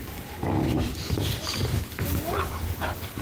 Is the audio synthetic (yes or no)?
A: yes